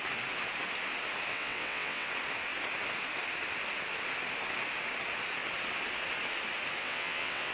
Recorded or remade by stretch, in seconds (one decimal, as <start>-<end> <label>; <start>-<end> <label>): 0.0-1.3 recorded; 1.3-2.1 remade; 2.1-6.8 recorded; 6.8-7.5 remade